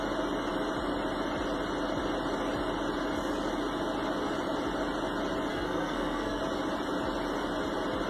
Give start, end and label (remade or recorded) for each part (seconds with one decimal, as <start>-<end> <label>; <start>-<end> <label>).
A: 0.0-5.5 recorded; 5.5-6.4 remade; 6.4-8.1 recorded